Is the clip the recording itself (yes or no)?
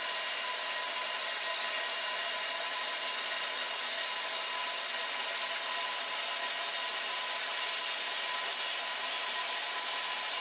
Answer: yes